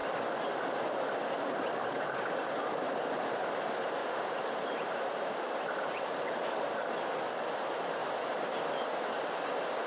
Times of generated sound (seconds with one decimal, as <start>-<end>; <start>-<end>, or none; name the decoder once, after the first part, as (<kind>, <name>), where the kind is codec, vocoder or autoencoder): 4.0-7.0 (vocoder, BigVGAN v2)